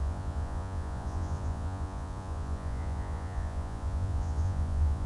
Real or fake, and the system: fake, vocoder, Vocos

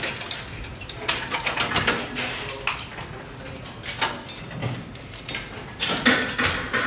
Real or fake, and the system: real